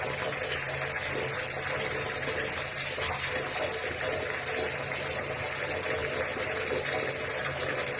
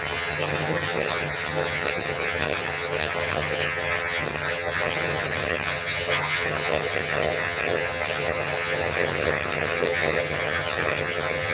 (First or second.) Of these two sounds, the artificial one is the second